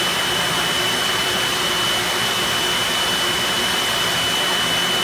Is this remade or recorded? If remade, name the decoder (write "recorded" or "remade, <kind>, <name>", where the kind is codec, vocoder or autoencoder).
recorded